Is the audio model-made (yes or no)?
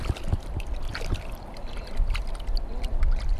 no